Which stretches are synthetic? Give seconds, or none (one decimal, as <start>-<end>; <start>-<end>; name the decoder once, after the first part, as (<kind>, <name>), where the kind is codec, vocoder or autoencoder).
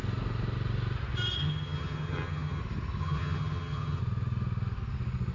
1.4-2.6 (vocoder, HiFi-GAN); 3.0-4.0